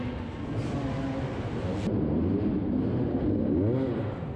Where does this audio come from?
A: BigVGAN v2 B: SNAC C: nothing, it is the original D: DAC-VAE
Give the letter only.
C